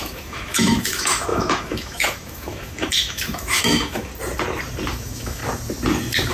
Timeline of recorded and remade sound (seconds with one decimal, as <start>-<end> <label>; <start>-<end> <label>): 0.0-4.1 remade; 4.1-4.9 recorded; 4.9-5.4 remade; 5.4-6.3 recorded